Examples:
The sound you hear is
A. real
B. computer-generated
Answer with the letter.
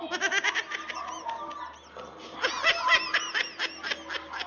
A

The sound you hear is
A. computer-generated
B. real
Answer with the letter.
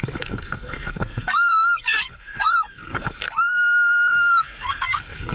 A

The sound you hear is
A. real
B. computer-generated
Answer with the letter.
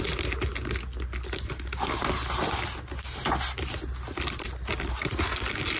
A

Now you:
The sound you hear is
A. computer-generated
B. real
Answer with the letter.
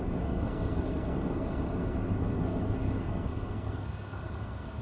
A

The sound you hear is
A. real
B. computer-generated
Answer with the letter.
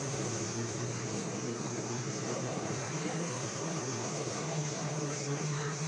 B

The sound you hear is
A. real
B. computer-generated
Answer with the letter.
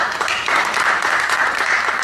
A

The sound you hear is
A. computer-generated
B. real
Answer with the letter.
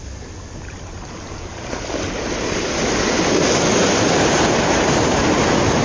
B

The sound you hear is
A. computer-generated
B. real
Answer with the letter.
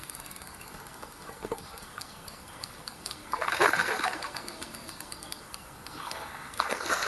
A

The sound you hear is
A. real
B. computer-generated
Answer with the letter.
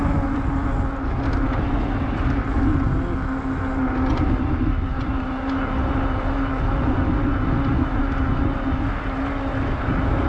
A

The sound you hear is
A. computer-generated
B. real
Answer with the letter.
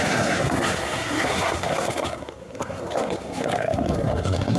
A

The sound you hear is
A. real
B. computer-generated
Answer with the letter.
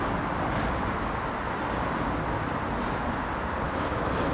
A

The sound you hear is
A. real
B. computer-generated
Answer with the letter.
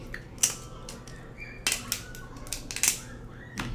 A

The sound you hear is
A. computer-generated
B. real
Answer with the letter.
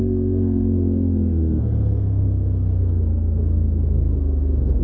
A